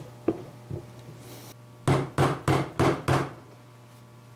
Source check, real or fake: real